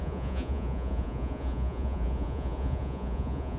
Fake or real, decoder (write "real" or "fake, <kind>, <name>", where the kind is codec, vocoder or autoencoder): fake, vocoder, Vocos